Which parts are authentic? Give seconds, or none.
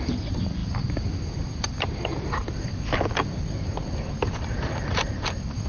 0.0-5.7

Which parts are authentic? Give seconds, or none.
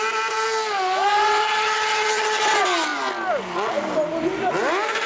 0.0-1.4; 2.4-5.1